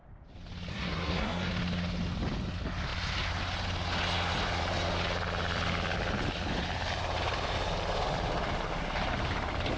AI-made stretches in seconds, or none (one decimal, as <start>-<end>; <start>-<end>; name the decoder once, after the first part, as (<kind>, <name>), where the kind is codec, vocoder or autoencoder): 0.7-1.5 (codec, SNAC)